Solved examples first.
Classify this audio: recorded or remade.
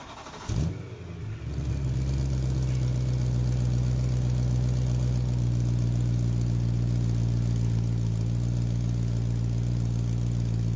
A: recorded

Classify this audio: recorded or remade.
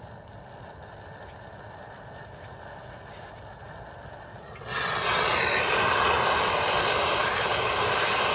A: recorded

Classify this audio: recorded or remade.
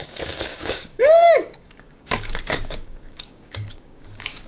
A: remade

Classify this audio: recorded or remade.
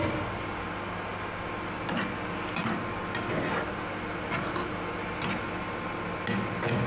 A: recorded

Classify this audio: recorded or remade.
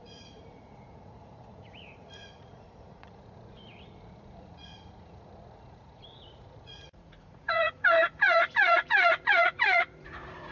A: remade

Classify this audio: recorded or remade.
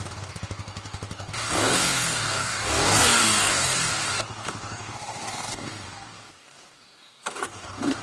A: remade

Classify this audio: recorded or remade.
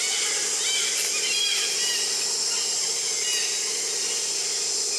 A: recorded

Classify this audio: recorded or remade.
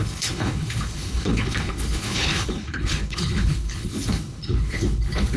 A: remade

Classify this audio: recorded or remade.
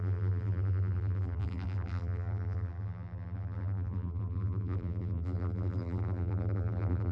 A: remade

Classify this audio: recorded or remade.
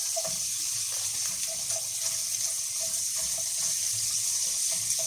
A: recorded